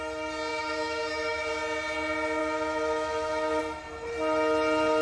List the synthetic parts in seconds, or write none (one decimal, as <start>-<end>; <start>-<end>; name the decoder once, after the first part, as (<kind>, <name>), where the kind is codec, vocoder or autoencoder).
0.5-1.5 (autoencoder, DAC-VAE); 2.4-3.6